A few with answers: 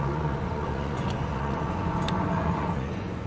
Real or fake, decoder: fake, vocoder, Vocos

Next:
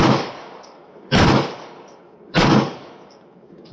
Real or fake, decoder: fake, codec, DAC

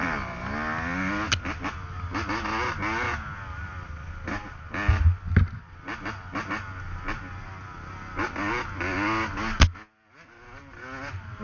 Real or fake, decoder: real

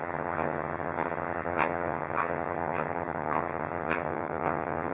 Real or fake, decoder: fake, vocoder, HiFi-GAN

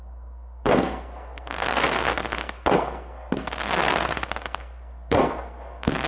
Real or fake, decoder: fake, codec, SNAC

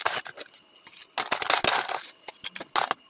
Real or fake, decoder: real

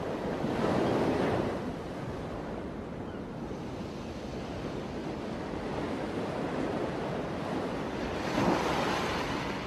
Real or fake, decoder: real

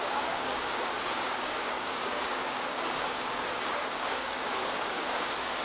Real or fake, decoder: fake, codec, DAC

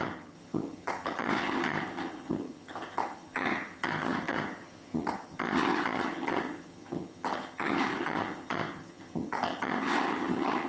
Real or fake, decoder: fake, vocoder, HiFi-GAN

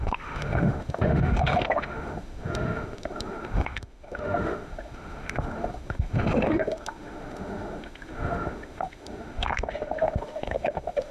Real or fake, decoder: fake, autoencoder, DAC-VAE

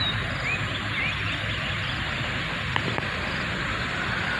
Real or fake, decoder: real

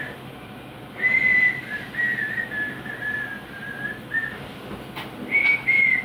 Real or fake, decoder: real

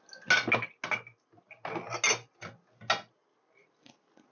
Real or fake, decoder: real